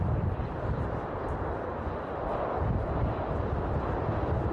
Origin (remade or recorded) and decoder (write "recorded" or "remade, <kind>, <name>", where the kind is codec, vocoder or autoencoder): recorded